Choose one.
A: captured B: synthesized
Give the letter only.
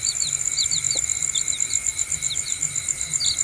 A